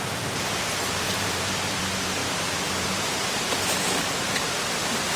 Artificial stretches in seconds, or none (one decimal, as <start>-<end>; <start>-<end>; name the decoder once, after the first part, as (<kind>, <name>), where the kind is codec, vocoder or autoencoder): 0.0-5.2 (vocoder, BigVGAN v2)